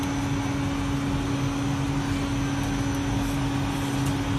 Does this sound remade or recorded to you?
recorded